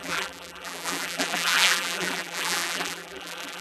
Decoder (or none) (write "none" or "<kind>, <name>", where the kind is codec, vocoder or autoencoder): vocoder, BigVGAN v2